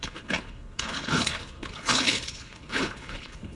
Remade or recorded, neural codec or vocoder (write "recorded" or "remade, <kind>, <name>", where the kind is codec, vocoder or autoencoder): remade, codec, HILCodec